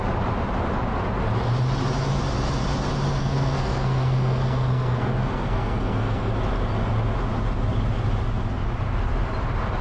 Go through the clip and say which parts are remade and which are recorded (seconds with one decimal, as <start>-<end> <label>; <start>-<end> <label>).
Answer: 0.0-3.2 recorded; 3.2-6.3 remade; 6.3-9.8 recorded